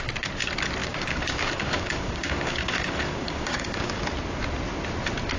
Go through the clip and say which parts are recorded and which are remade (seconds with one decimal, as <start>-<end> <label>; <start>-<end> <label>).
0.0-0.8 recorded; 0.8-4.0 remade; 4.0-5.4 recorded

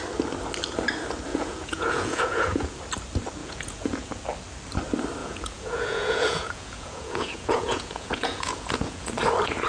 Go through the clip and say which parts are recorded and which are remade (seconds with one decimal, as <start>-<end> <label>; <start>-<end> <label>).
0.0-1.3 recorded; 1.3-2.8 remade; 2.8-3.4 recorded; 3.4-4.1 remade; 4.1-5.2 recorded; 5.2-9.1 remade; 9.1-9.7 recorded

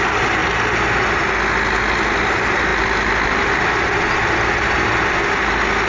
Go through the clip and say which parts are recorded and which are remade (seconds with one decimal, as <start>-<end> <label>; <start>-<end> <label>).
0.0-5.9 recorded

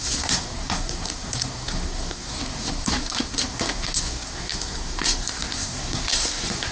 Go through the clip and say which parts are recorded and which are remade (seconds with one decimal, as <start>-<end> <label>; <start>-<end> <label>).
0.0-6.7 remade

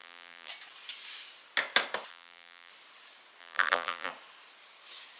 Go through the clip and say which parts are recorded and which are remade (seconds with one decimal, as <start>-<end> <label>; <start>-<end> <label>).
0.0-0.5 remade; 0.5-2.1 recorded; 2.1-2.7 remade; 2.7-3.4 recorded; 3.4-4.1 remade; 4.1-5.2 recorded

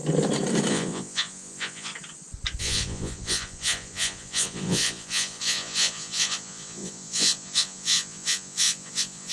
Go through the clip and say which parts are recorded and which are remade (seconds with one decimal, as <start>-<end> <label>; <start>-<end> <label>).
0.0-0.7 recorded; 0.7-1.9 remade; 1.9-2.6 recorded; 2.6-9.3 remade